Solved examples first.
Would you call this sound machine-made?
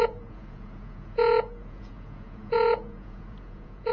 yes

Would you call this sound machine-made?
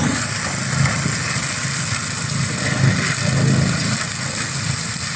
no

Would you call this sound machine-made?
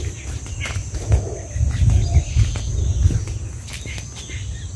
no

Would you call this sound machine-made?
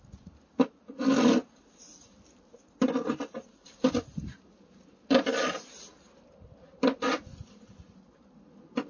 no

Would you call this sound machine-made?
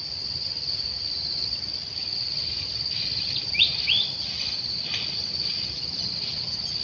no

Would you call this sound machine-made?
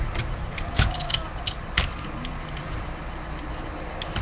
no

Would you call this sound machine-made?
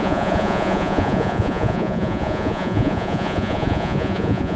yes